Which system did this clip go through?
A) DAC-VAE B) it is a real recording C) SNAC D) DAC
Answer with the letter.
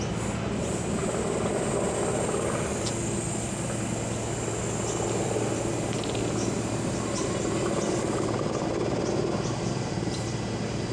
B